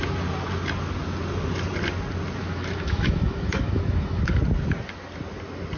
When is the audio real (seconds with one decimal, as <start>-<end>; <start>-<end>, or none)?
0.0-2.4; 4.4-5.8

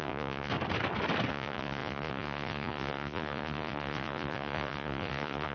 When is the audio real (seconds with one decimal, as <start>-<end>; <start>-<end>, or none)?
0.5-1.3

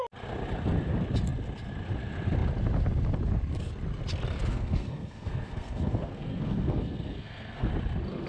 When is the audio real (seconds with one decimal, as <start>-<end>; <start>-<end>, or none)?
0.0-4.5; 7.7-8.3

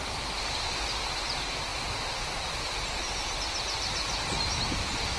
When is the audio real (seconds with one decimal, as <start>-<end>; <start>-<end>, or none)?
0.0-5.2